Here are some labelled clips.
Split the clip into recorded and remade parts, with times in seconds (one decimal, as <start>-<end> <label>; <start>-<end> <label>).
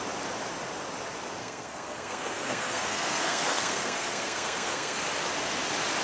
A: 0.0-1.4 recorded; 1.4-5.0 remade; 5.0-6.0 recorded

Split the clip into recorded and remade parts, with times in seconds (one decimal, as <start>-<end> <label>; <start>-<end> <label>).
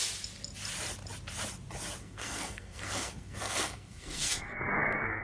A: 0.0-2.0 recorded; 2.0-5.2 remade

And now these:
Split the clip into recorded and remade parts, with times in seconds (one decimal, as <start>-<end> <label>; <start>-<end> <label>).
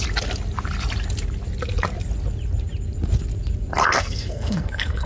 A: 0.0-3.8 recorded; 3.8-5.1 remade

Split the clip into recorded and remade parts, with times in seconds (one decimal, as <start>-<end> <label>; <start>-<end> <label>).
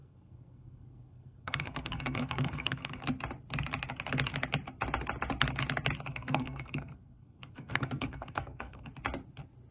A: 0.0-3.0 remade; 3.0-6.1 recorded; 6.1-8.9 remade; 8.9-9.7 recorded